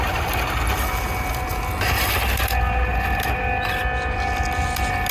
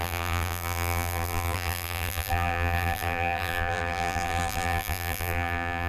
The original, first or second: first